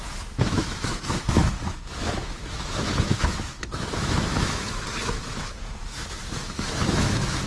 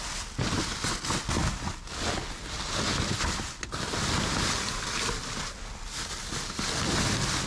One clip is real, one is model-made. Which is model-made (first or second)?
first